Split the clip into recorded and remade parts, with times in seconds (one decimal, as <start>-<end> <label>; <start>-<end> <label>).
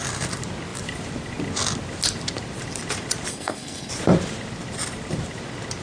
0.0-3.3 recorded; 3.3-3.9 remade; 3.9-5.8 recorded